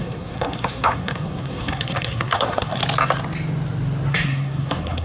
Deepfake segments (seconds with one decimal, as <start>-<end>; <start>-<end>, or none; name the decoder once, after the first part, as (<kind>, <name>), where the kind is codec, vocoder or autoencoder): 0.0-2.8 (codec, SNAC); 4.1-5.0